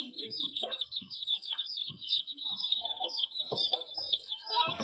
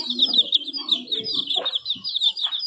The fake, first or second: first